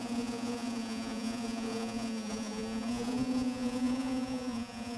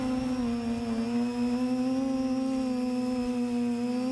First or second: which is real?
second